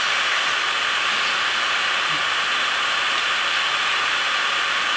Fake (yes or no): no